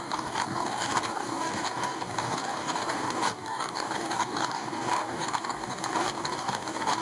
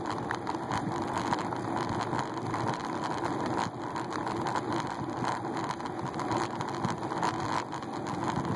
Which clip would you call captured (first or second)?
second